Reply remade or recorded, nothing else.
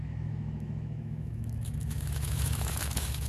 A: remade